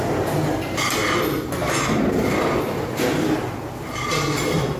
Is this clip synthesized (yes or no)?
no